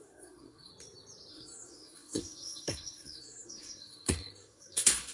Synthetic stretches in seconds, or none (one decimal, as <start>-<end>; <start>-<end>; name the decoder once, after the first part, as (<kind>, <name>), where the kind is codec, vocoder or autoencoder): 0.0-0.7 (codec, SNAC); 1.3-5.1